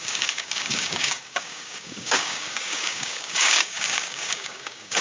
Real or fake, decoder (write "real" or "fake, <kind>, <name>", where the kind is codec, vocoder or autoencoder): fake, codec, DAC